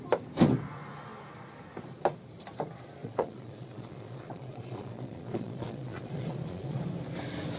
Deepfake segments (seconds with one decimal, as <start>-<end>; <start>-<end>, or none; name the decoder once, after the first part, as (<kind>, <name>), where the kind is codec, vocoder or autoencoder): 3.0-6.8 (vocoder, Vocos)

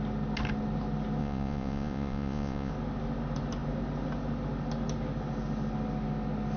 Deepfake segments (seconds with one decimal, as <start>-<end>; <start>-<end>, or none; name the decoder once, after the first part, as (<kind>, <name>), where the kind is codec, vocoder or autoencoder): 1.2-2.7 (vocoder, Vocos)

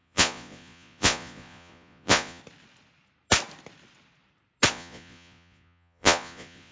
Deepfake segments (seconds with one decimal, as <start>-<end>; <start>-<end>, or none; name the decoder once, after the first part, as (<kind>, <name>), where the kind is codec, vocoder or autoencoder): 0.0-2.4 (vocoder, Vocos); 4.7-6.7

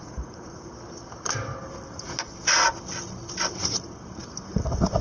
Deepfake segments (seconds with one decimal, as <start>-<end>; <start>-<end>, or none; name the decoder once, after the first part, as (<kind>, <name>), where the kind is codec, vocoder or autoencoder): 0.0-0.7 (vocoder, Vocos)

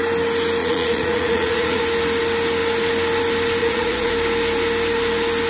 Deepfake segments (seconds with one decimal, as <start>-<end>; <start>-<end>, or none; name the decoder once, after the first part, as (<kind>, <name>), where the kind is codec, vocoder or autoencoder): 0.6-1.8 (vocoder, Vocos); 3.6-4.1

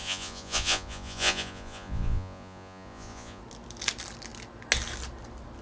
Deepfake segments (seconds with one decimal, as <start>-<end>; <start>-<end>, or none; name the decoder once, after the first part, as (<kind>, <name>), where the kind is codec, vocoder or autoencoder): 0.0-3.4 (vocoder, Vocos)

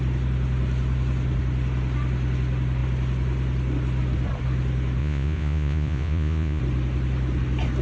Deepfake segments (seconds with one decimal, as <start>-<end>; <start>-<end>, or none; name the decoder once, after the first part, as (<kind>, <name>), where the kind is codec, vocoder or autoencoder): 5.0-6.6 (vocoder, Vocos)